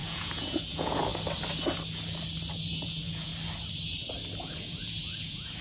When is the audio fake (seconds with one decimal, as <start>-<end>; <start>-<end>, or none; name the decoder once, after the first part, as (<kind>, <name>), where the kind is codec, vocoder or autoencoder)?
0.0-1.1 (vocoder, Vocos); 2.7-3.3; 4.4-5.6